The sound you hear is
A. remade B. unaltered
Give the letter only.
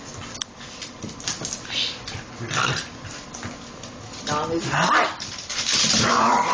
B